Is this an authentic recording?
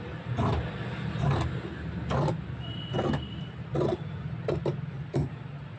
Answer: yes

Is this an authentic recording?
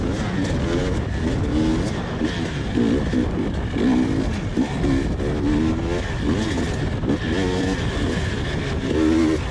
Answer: yes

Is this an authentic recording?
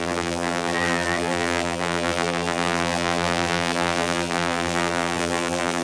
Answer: no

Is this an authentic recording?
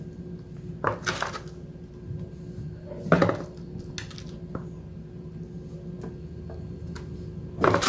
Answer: yes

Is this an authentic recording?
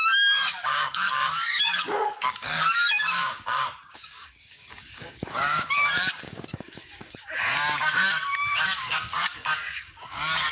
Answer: no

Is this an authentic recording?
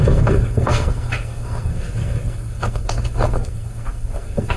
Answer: no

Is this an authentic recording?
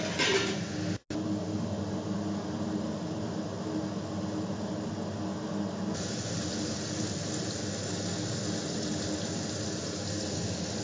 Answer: yes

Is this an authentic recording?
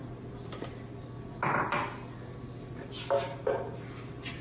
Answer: yes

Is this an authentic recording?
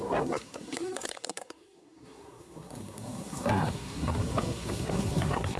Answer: no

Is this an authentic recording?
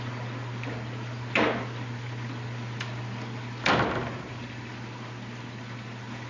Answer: yes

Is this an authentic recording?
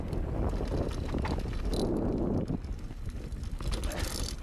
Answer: yes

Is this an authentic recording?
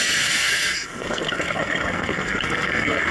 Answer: no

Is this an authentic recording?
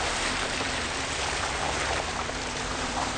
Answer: no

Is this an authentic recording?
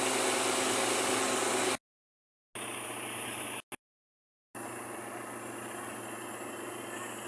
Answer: yes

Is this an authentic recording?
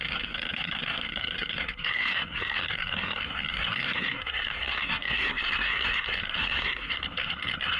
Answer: no